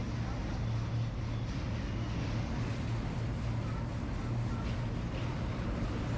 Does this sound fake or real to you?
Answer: real